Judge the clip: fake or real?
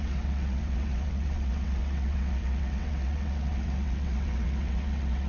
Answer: fake